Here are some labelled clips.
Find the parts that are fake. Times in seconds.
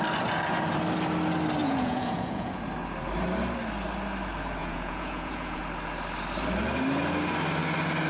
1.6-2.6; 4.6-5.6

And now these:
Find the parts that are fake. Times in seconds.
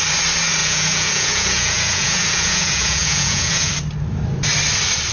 0.6-3.7